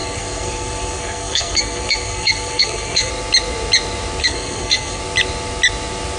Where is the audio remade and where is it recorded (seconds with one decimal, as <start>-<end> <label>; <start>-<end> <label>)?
0.0-3.1 remade; 3.1-4.2 recorded; 4.2-5.0 remade; 5.0-6.2 recorded